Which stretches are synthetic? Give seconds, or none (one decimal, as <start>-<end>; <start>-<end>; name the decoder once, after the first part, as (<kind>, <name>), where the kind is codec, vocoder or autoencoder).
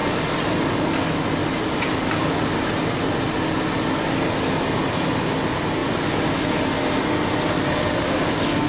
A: none